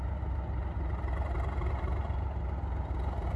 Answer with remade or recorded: recorded